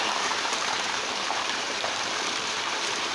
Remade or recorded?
remade